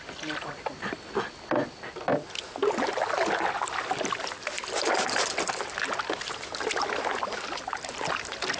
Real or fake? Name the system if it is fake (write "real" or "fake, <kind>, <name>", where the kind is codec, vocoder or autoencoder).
real